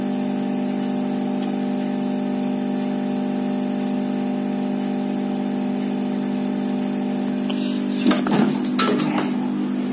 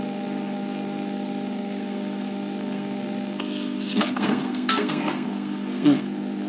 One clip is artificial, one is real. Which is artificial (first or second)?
second